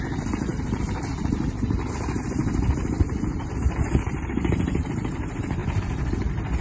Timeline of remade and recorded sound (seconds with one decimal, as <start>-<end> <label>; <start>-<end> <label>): 0.0-5.6 remade; 5.6-6.6 recorded